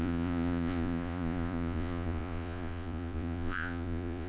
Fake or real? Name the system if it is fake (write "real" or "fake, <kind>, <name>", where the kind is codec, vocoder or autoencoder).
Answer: fake, vocoder, Vocos